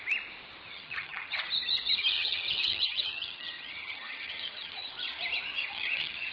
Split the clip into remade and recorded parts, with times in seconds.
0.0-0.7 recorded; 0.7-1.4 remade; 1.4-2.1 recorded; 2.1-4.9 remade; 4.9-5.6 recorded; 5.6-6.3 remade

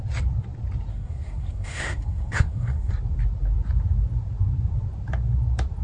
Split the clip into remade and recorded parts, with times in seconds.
0.0-0.9 recorded; 0.9-2.9 remade; 2.9-5.8 recorded

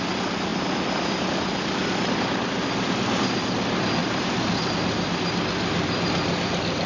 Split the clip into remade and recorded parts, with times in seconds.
0.0-4.0 recorded; 4.0-4.8 remade; 4.8-6.9 recorded

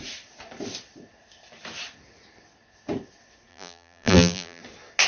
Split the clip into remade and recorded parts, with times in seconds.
0.0-3.5 recorded; 3.5-4.6 remade; 4.6-5.1 recorded

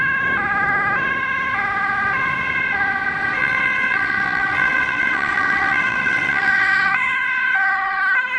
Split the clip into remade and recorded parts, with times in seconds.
0.0-3.4 recorded; 3.4-8.0 remade; 8.0-8.4 recorded

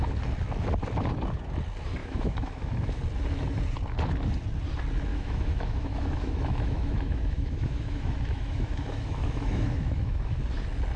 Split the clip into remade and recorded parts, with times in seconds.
0.0-2.0 recorded; 2.0-3.0 remade; 3.0-5.1 recorded; 5.1-10.4 remade; 10.4-11.0 recorded

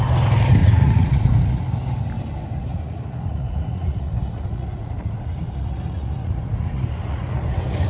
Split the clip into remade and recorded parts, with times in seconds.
0.0-0.6 recorded; 0.6-1.2 remade; 1.2-2.7 recorded; 2.7-7.4 remade; 7.4-7.9 recorded

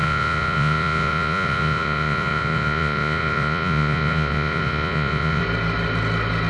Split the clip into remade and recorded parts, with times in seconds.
0.0-5.4 remade; 5.4-6.5 recorded